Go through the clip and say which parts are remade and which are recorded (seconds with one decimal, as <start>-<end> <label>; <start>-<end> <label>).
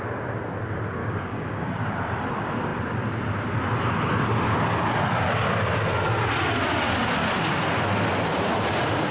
0.0-1.0 recorded; 1.0-1.8 remade; 1.8-9.1 recorded